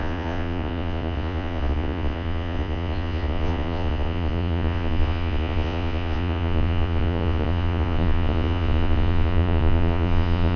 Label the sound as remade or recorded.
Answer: remade